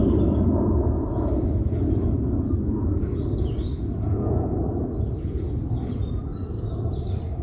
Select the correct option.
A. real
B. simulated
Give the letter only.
A